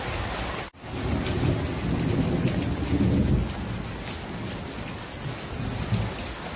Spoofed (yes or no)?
no